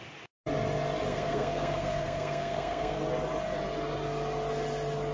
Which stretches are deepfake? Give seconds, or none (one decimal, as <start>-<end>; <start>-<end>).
1.1-3.0